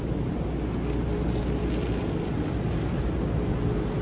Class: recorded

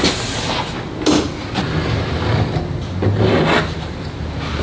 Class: recorded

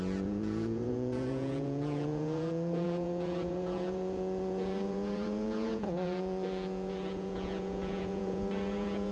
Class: remade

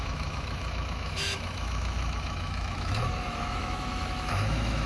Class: remade